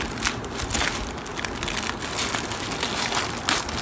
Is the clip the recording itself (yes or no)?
yes